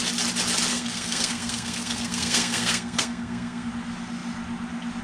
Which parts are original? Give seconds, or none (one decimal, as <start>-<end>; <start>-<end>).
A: 0.0-0.7; 3.7-5.0